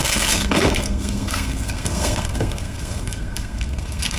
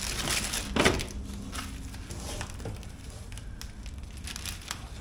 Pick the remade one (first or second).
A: first